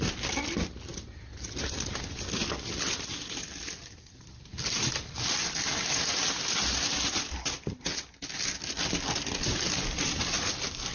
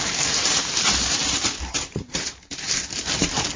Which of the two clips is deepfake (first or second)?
second